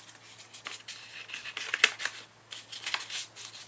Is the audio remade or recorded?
recorded